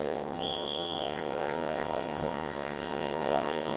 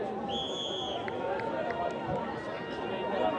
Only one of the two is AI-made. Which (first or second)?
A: first